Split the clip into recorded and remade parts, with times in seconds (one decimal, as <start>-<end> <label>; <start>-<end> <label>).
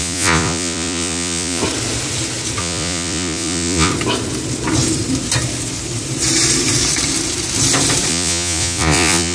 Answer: 0.0-1.6 remade; 1.6-2.6 recorded; 2.6-3.9 remade; 3.9-8.1 recorded; 8.1-9.3 remade